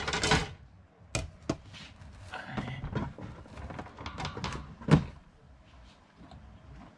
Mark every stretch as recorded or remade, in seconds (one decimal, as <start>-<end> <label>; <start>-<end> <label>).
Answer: 0.0-7.0 recorded